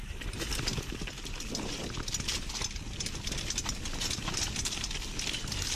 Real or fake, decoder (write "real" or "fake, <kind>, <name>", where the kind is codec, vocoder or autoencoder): real